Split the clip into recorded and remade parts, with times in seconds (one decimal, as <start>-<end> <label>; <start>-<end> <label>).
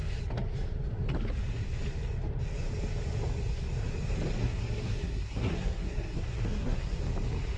0.0-4.4 recorded; 4.4-7.0 remade; 7.0-7.6 recorded